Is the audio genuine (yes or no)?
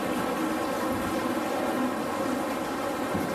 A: yes